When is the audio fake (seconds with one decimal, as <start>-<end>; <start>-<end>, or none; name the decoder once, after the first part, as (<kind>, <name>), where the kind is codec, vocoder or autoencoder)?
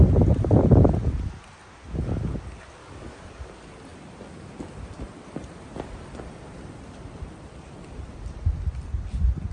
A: 2.8-3.5 (codec, DAC)